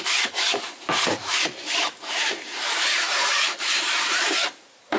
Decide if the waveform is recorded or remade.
remade